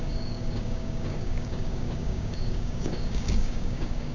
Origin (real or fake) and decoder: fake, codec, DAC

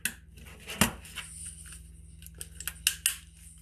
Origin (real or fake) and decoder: real